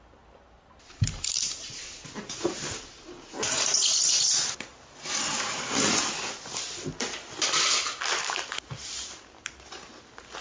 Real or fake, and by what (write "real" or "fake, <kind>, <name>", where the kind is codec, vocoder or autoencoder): real